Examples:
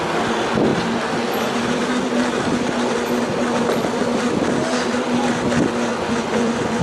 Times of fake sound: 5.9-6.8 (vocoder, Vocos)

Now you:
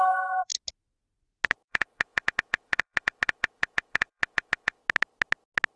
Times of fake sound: 0.0-0.5 (vocoder, Vocos); 1.7-4.8

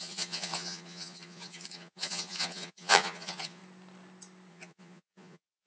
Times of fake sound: 0.0-3.6 (vocoder, Vocos); 4.5-5.7

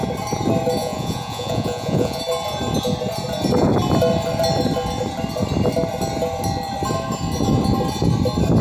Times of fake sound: 0.8-2.2 (vocoder, Vocos)

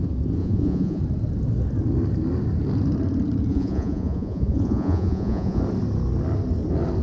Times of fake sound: 0.4-1.0 (vocoder, Vocos); 3.5-5.6